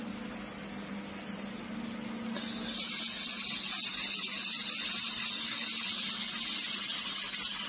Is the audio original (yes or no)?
yes